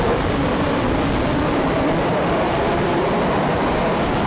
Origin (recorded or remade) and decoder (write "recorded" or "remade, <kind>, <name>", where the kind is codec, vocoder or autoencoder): recorded